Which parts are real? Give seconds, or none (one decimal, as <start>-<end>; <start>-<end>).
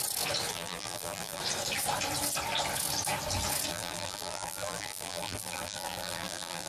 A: 0.0-0.5; 1.4-3.7